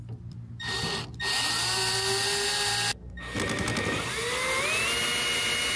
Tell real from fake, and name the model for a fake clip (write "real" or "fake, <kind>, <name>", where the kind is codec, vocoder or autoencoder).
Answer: real